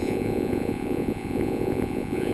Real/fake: fake